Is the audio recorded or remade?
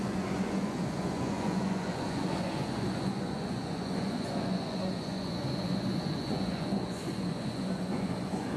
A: remade